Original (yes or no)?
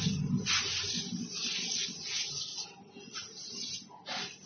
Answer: yes